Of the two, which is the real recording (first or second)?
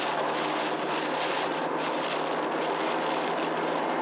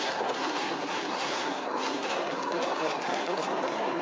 first